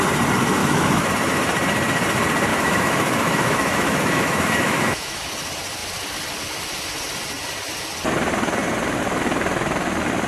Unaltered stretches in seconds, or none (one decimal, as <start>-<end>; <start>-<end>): 0.0-0.6; 1.1-2.5; 5.3-10.3